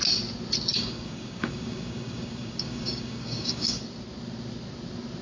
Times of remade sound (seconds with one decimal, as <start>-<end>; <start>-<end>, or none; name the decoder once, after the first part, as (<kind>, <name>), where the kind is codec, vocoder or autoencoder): 0.7-3.8 (codec, DAC)